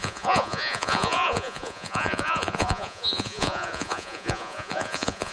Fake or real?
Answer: fake